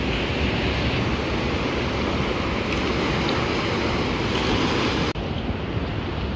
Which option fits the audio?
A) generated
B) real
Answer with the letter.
B